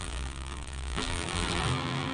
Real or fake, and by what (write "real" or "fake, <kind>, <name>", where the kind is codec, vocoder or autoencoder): fake, vocoder, BigVGAN v2